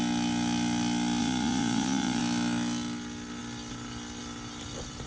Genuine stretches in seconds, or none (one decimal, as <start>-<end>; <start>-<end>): 0.0-1.2; 2.2-5.1